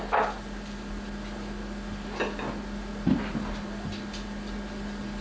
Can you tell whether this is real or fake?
real